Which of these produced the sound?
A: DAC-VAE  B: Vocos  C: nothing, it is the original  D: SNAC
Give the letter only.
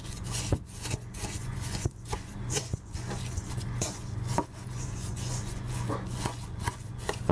B